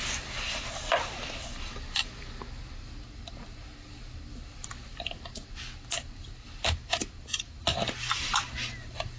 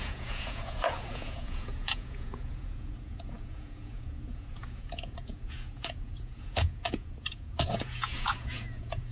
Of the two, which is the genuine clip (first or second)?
first